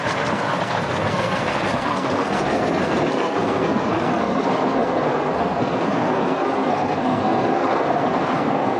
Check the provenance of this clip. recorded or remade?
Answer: remade